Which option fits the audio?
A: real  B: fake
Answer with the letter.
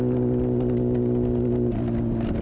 A